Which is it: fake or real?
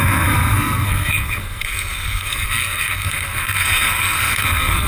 fake